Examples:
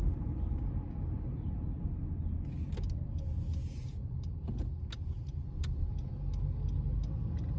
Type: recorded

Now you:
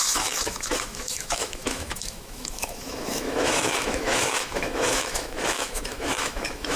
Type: remade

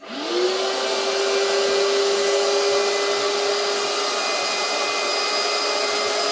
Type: recorded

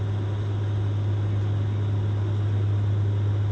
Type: recorded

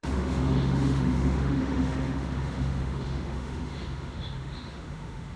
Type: remade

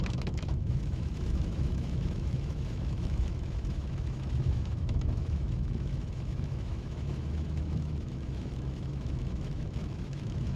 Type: remade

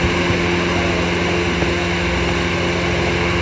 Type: recorded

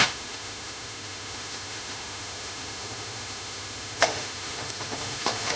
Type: remade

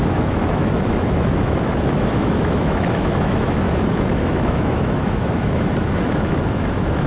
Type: remade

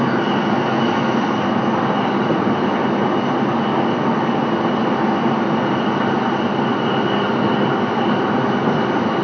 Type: recorded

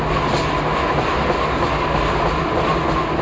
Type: recorded